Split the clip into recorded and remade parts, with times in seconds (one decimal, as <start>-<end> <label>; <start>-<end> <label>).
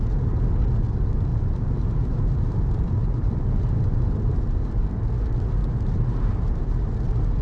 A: 0.0-1.3 recorded; 1.3-4.9 remade; 4.9-5.6 recorded; 5.6-6.9 remade; 6.9-7.4 recorded